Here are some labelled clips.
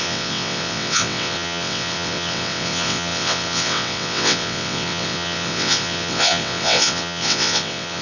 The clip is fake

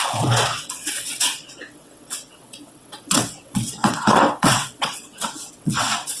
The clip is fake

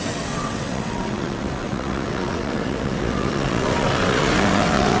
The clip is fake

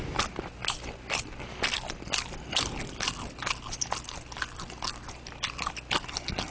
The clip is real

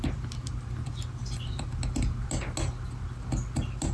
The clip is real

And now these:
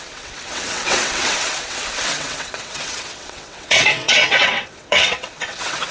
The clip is fake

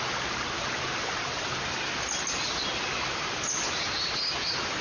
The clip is real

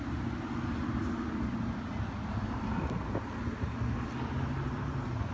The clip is real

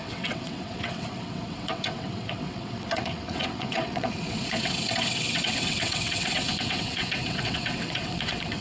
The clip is fake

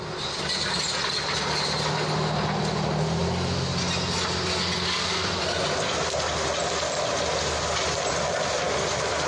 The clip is real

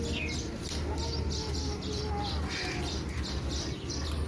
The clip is real